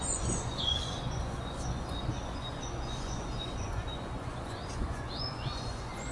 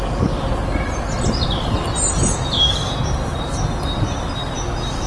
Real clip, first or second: second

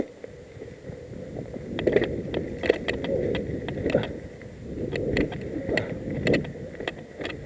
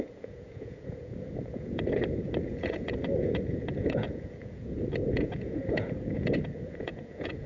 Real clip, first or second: first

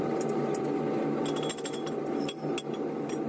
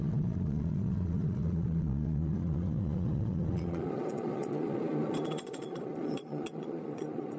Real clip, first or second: first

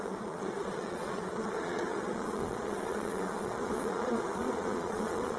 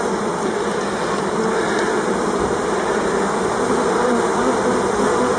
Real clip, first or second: second